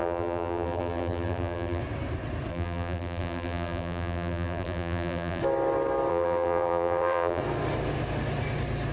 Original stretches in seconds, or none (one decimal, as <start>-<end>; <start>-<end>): 1.8-2.5; 5.4-6.1; 7.4-8.9